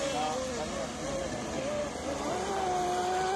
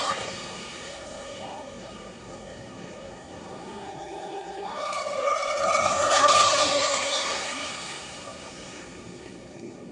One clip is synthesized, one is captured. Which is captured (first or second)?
first